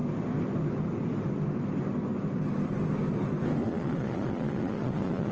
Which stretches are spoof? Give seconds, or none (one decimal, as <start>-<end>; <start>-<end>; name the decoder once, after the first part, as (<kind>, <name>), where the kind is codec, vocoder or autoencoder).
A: 3.6-5.3 (vocoder, Vocos)